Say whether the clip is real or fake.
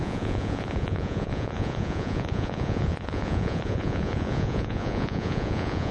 fake